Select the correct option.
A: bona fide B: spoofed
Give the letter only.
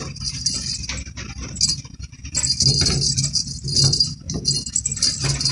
A